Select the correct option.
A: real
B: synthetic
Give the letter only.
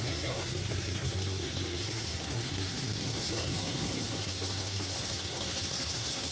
B